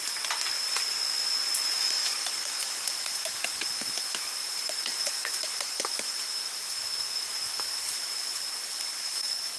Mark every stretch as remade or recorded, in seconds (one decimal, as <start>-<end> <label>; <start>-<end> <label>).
0.0-1.8 recorded; 1.8-9.6 remade